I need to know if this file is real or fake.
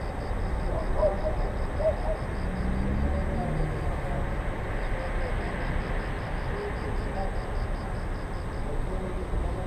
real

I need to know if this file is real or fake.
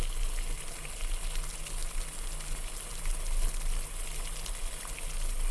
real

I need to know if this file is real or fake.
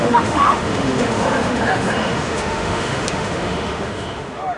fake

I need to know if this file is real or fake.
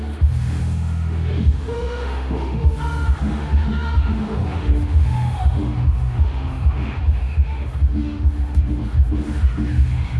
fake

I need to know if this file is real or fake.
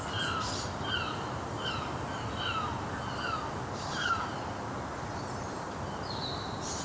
real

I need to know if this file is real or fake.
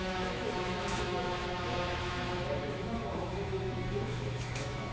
fake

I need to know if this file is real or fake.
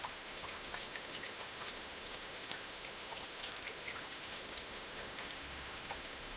fake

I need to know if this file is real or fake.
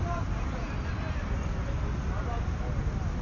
real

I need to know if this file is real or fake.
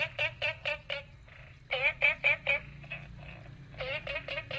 real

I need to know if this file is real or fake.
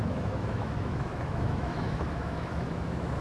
fake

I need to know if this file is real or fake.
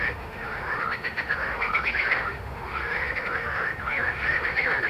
fake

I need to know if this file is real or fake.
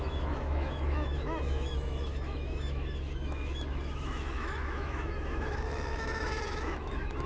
fake